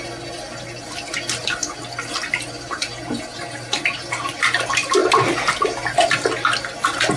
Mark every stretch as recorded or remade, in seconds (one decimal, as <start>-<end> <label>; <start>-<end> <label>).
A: 0.0-7.2 recorded